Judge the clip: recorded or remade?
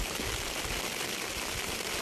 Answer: recorded